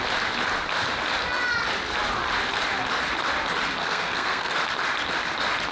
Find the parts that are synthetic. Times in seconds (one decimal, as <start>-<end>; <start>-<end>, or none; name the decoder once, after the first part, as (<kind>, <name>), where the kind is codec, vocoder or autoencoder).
3.8-4.6 (codec, SNAC)